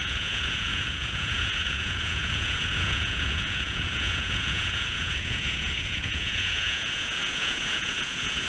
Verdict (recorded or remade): remade